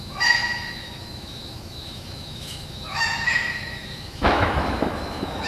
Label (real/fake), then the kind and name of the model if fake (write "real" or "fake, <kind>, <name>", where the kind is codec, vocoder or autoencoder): fake, autoencoder, DAC-VAE